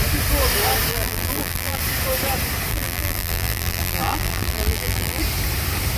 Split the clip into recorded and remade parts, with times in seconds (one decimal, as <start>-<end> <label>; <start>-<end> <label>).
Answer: 0.0-0.9 recorded; 0.9-1.8 remade; 1.8-2.7 recorded; 2.7-5.2 remade; 5.2-6.0 recorded